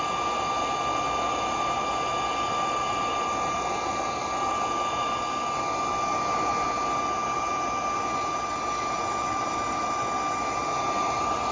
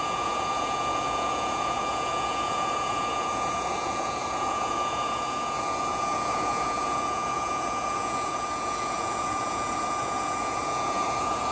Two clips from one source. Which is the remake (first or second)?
second